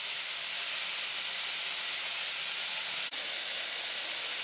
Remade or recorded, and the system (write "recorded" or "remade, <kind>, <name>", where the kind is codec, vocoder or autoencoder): recorded